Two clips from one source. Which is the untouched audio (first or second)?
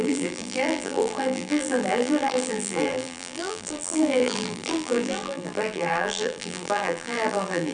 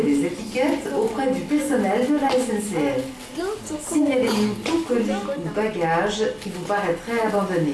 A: second